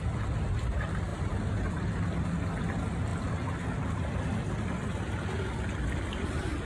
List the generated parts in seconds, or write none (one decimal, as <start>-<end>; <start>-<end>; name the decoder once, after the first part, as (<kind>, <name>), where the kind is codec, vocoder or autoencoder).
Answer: 1.1-1.7 (vocoder, BigVGAN v2)